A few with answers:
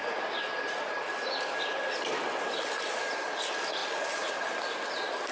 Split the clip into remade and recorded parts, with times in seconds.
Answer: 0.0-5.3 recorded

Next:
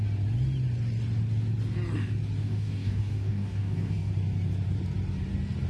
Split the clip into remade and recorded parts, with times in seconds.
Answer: 0.0-2.4 recorded; 2.4-4.1 remade; 4.1-5.7 recorded

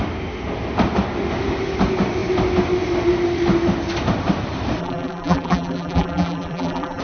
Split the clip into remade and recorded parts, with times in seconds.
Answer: 0.0-4.8 recorded; 4.8-7.0 remade

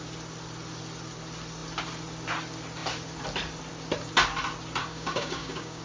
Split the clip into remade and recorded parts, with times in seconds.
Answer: 0.0-4.8 recorded; 4.8-5.8 remade

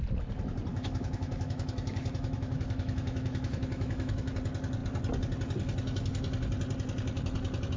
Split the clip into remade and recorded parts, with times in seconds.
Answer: 0.0-0.7 recorded; 0.7-4.3 remade; 4.3-7.8 recorded

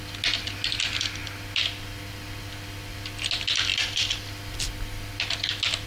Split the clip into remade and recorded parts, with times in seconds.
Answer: 0.0-3.7 recorded; 3.7-5.1 remade; 5.1-5.9 recorded